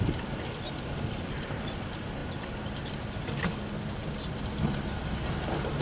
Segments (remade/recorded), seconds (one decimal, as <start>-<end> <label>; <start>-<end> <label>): 0.0-5.8 recorded